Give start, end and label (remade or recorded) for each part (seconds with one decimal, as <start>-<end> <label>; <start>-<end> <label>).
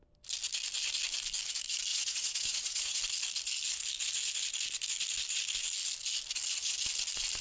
0.0-1.9 recorded; 1.9-3.0 remade; 3.0-7.4 recorded